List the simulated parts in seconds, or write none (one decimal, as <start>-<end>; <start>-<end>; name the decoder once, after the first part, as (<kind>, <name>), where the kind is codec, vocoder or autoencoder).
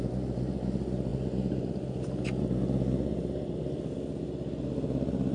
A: none